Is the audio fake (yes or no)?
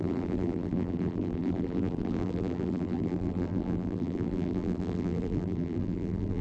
yes